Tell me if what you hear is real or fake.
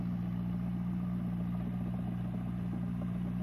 real